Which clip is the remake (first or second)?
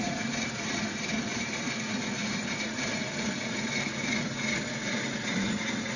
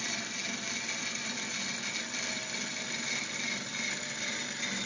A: first